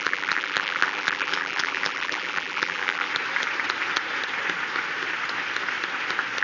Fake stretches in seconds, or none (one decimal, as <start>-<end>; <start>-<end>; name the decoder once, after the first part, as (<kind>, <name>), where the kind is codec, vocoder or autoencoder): 0.0-3.1 (vocoder, BigVGAN v2)